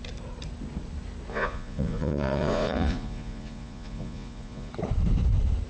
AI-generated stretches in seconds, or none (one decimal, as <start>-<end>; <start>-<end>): 1.3-4.7